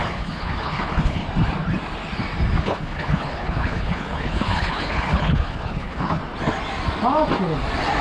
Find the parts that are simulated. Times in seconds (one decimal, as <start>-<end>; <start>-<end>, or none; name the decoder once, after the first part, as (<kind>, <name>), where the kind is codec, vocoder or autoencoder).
0.0-1.2 (codec, HILCodec); 2.6-6.2